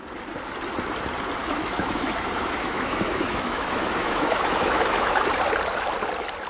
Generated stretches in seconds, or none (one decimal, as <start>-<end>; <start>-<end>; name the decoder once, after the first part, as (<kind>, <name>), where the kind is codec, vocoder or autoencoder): 1.4-5.3 (autoencoder, DAC-VAE)